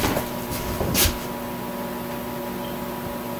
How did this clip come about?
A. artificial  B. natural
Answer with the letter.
B